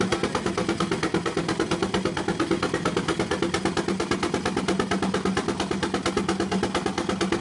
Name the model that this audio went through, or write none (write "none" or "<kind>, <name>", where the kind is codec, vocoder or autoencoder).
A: none